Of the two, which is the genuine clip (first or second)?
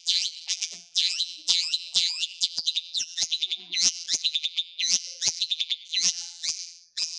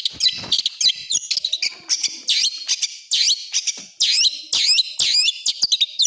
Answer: second